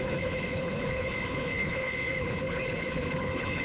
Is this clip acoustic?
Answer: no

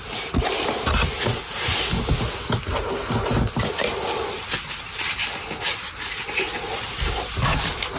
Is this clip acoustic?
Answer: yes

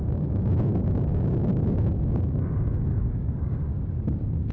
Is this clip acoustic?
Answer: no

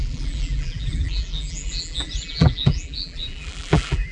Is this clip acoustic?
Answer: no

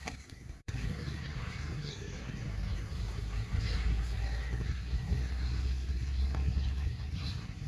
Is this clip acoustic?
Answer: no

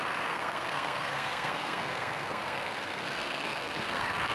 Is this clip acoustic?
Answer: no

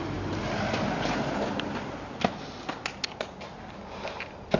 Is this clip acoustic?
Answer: yes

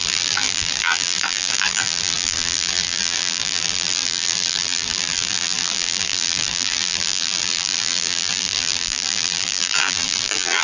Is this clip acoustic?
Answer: no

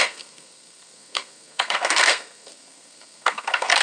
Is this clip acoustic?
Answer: no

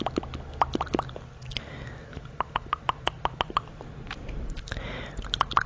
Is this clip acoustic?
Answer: yes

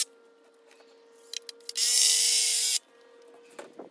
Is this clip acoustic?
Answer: yes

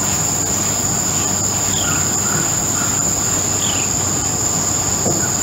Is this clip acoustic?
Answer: yes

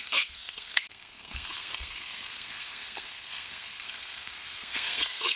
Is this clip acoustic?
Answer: no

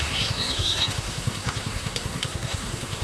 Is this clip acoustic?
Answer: no